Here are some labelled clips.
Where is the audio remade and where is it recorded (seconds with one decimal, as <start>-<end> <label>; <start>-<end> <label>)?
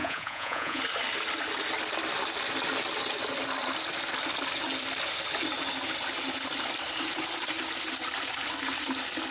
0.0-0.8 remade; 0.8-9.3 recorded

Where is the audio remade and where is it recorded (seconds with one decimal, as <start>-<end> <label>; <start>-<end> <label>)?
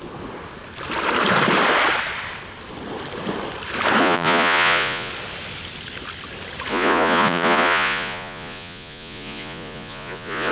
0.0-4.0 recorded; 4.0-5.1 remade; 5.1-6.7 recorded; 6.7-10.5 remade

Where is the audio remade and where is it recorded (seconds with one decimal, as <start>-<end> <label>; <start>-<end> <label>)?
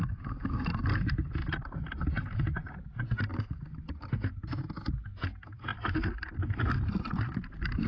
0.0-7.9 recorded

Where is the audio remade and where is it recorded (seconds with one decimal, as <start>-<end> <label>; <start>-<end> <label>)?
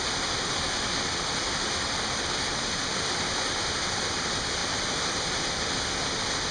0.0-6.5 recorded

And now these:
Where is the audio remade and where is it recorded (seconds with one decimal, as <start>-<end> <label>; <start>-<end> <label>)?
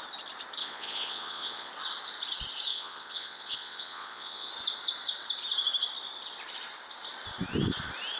0.0-0.6 recorded; 0.6-1.7 remade; 1.7-2.7 recorded; 2.7-4.5 remade; 4.5-8.2 recorded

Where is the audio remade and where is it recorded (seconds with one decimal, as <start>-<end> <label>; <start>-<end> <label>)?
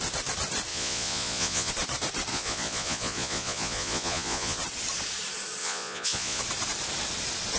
0.0-0.7 recorded; 0.7-1.7 remade; 1.7-2.3 recorded; 2.3-4.6 remade; 4.6-5.6 recorded; 5.6-6.4 remade; 6.4-7.6 recorded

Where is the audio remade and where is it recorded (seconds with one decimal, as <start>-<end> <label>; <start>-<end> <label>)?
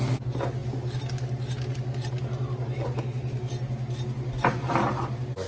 0.0-5.5 recorded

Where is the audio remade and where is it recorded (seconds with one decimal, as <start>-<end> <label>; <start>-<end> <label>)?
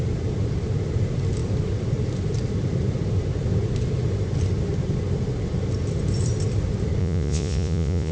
0.0-7.0 recorded; 7.0-8.1 remade